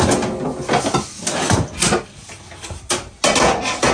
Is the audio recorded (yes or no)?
yes